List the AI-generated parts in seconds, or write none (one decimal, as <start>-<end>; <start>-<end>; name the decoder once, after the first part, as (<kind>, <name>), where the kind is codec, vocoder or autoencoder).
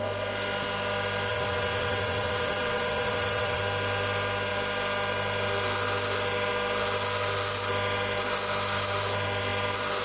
1.3-3.6 (vocoder, WaveNeXt)